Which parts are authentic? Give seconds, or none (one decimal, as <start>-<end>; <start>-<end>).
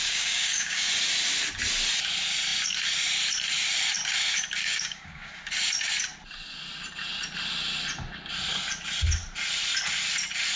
0.9-4.6; 5.3-10.6